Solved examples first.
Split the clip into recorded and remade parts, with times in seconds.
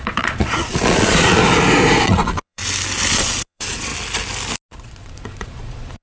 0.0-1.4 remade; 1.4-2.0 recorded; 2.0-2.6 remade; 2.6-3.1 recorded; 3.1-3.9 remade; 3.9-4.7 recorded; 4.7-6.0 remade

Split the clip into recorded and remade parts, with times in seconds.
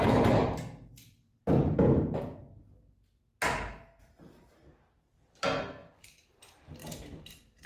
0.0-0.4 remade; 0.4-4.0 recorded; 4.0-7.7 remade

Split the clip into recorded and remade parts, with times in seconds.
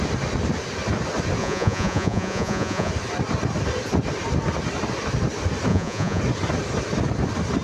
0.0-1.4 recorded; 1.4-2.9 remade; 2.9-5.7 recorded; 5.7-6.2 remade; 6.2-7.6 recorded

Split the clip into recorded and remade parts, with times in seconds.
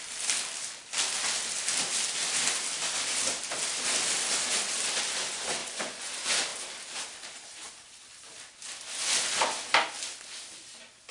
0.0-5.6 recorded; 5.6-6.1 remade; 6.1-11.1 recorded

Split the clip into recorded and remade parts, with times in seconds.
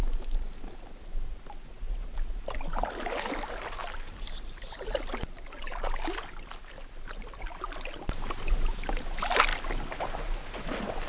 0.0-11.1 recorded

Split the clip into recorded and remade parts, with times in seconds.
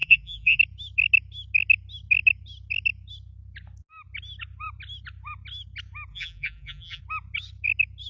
0.0-0.6 remade; 0.6-6.1 recorded; 6.1-7.0 remade; 7.0-8.1 recorded